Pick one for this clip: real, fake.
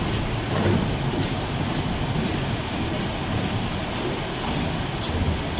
real